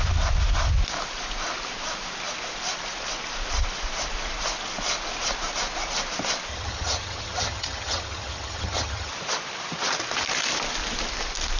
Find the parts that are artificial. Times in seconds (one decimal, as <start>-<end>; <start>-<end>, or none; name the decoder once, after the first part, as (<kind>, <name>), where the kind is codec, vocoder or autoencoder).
6.5-9.1 (vocoder, HiFi-GAN)